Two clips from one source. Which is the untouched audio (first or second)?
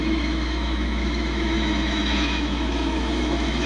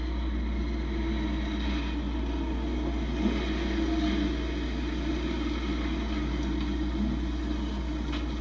second